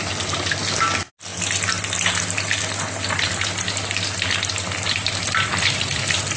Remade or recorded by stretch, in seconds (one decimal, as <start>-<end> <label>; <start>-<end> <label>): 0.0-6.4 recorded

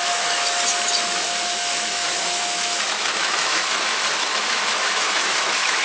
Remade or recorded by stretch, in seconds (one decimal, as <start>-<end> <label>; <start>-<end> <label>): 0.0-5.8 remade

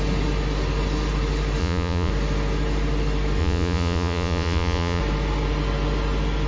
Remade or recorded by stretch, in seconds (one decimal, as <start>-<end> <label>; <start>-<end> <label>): 0.0-1.6 recorded; 1.6-2.1 remade; 2.1-3.4 recorded; 3.4-5.0 remade; 5.0-6.5 recorded

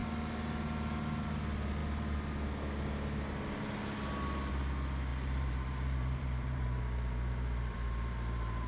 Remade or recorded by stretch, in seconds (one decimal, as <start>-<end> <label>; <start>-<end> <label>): 0.0-5.1 recorded; 5.1-8.7 remade